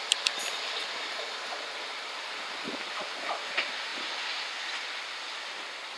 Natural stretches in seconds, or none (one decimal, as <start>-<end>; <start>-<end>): none